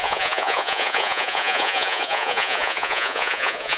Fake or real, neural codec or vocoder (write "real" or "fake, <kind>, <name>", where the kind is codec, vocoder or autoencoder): fake, vocoder, Vocos